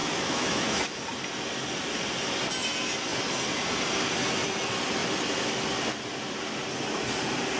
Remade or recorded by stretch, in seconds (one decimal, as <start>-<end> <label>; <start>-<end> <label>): 0.0-1.0 remade; 1.0-7.6 recorded

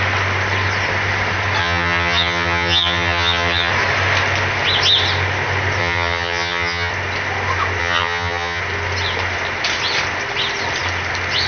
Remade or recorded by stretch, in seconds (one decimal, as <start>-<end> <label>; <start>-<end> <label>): 0.0-1.6 recorded; 1.6-3.7 remade; 3.7-5.8 recorded; 5.8-6.9 remade; 6.9-7.8 recorded; 7.8-8.6 remade; 8.6-11.5 recorded